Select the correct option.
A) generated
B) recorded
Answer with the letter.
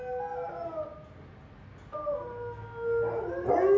B